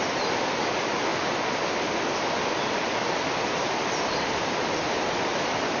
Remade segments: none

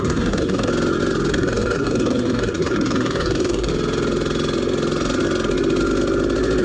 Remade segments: 0.0-0.7 (codec, SNAC); 1.3-3.7

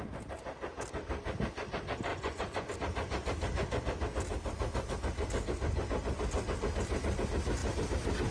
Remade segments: 2.1-2.7 (vocoder, Vocos)

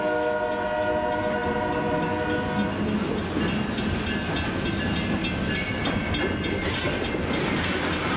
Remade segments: none

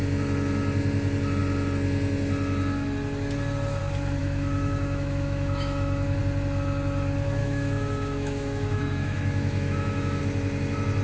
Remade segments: 4.2-6.2 (autoencoder, DAC-VAE); 7.4-10.2

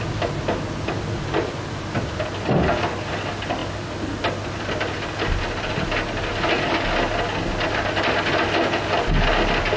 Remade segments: none